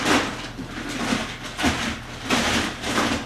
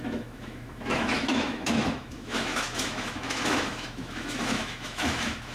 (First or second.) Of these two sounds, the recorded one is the first